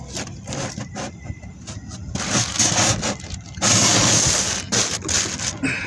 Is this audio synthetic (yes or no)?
no